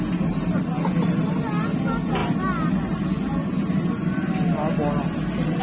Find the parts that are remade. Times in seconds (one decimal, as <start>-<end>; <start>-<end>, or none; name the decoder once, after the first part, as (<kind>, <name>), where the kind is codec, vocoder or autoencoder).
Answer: none